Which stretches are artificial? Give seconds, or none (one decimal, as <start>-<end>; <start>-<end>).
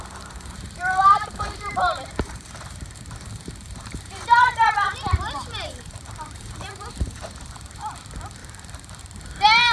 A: 0.0-9.7